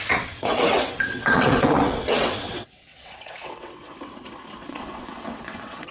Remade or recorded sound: remade